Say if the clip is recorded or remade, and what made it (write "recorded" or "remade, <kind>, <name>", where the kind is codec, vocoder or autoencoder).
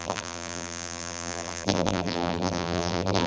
remade, vocoder, BigVGAN v2